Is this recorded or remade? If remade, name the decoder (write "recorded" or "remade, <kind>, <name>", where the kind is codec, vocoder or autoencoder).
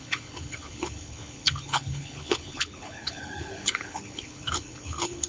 remade, codec, HILCodec